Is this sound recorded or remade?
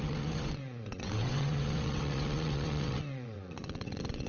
remade